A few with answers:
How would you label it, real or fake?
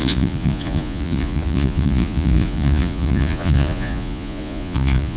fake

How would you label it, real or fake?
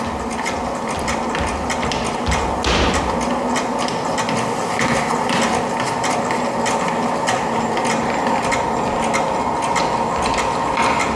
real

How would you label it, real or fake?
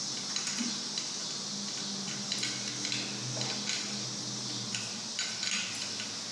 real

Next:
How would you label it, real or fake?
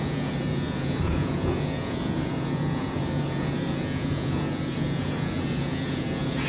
fake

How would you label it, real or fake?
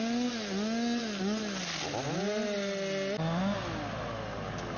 real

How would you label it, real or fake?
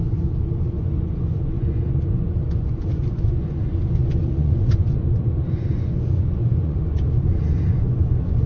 fake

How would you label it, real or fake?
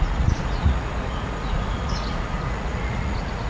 fake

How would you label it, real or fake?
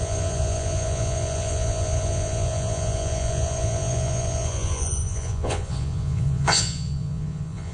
fake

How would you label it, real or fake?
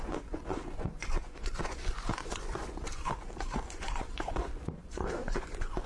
fake